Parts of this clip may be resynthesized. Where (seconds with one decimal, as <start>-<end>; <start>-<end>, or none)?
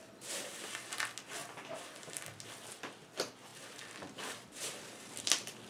3.5-5.7